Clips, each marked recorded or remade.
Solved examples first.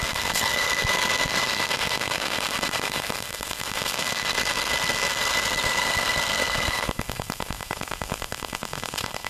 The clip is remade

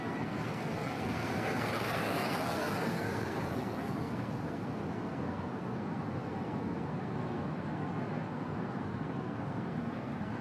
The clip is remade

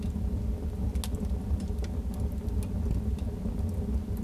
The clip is recorded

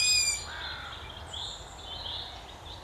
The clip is recorded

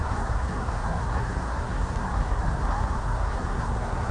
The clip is remade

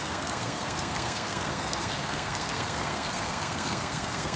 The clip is remade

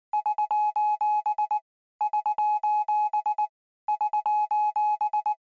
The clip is recorded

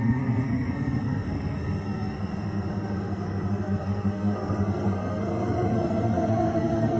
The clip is remade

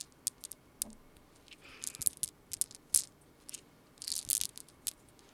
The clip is recorded